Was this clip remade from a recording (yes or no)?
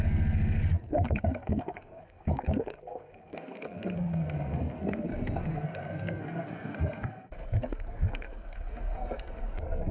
yes